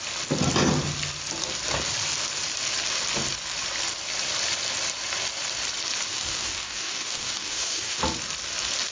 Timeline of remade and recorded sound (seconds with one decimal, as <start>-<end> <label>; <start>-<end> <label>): 0.0-6.1 recorded; 6.1-8.0 remade; 8.0-8.9 recorded